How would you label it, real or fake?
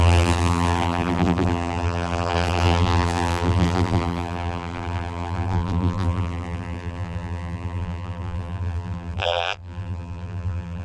fake